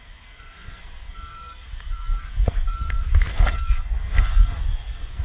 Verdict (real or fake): fake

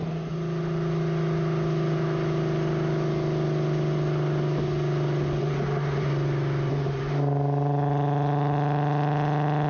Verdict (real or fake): real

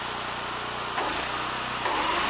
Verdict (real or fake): real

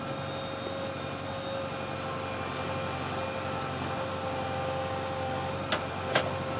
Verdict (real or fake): real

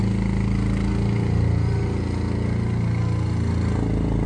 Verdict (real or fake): real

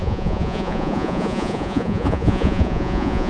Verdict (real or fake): fake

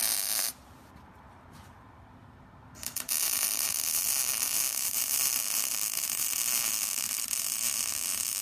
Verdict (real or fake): fake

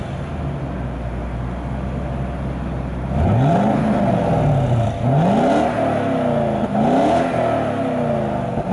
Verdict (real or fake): real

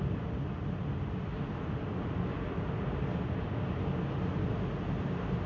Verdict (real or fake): real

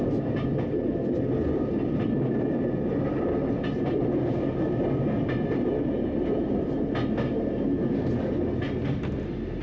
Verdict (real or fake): real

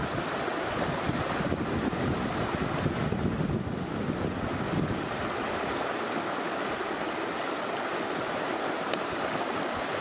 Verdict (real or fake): real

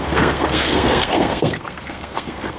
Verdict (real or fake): fake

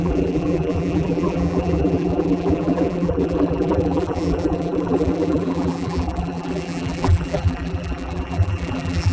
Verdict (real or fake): fake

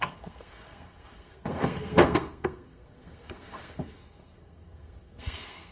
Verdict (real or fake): fake